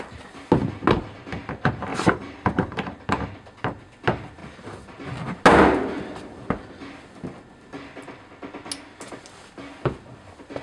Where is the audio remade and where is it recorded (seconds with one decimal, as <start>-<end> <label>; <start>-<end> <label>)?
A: 0.0-1.9 recorded; 1.9-3.0 remade; 3.0-10.6 recorded